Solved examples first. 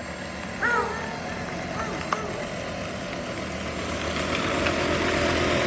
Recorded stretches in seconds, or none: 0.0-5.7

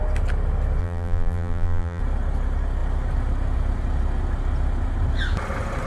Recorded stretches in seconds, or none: 0.0-0.8; 2.0-5.9